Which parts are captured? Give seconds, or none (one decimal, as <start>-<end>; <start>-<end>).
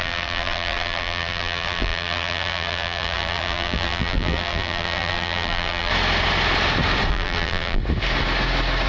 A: 5.9-7.1; 7.8-8.9